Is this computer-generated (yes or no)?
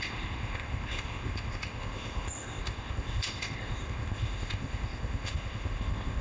yes